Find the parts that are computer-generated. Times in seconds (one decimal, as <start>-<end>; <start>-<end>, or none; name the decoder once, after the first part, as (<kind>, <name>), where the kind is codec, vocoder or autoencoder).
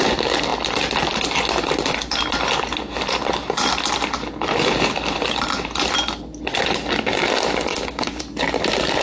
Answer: 7.7-8.2 (codec, DAC)